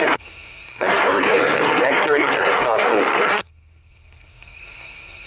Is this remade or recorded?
remade